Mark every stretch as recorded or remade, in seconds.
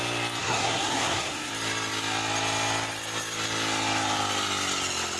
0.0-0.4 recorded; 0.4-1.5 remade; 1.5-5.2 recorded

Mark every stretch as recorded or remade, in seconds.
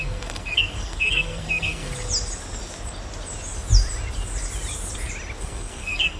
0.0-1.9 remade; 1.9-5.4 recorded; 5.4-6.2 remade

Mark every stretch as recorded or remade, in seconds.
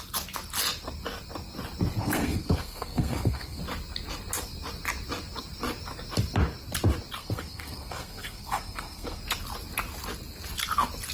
0.0-2.0 recorded; 2.0-3.6 remade; 3.6-7.2 recorded; 7.2-9.2 remade; 9.2-11.1 recorded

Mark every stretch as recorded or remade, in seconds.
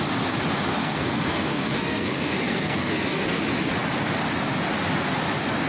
0.0-0.7 recorded; 0.7-3.4 remade; 3.4-5.7 recorded